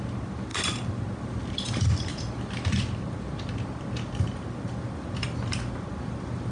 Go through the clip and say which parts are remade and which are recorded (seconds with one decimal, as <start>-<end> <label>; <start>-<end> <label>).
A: 0.0-6.5 recorded